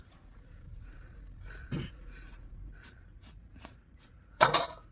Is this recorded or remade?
remade